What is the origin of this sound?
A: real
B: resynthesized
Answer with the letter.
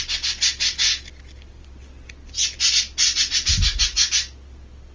A